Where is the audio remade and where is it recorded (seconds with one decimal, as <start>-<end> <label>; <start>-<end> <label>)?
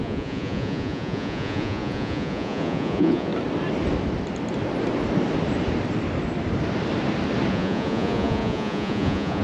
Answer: 0.0-3.3 remade; 3.3-7.5 recorded; 7.5-9.4 remade